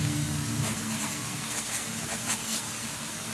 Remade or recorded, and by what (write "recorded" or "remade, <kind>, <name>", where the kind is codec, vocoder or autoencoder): remade, codec, SNAC